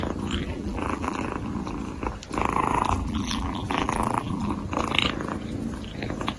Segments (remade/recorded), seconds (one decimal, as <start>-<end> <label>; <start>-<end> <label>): 0.0-0.4 recorded; 0.4-1.2 remade; 1.2-3.0 recorded; 3.0-4.5 remade; 4.5-6.4 recorded